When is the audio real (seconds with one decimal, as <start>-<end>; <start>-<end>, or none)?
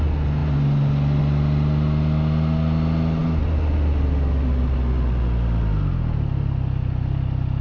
0.0-7.6